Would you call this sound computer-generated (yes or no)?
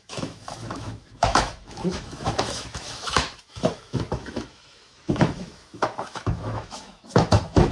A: yes